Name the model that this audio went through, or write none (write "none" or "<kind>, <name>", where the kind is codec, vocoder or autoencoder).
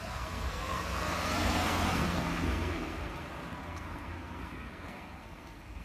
codec, SNAC